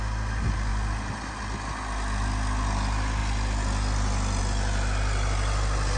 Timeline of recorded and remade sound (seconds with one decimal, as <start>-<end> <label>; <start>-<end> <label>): 0.0-6.0 recorded